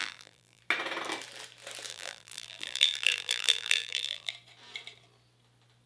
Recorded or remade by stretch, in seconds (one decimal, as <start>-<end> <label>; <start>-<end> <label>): 0.0-0.6 remade; 0.6-1.9 recorded; 1.9-4.3 remade; 4.3-5.9 recorded